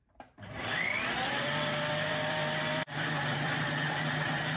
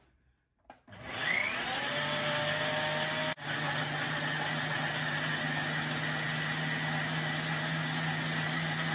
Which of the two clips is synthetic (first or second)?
first